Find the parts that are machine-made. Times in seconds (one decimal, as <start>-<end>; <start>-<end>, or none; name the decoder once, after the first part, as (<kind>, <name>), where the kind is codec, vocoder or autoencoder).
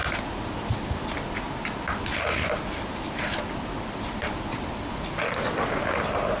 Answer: none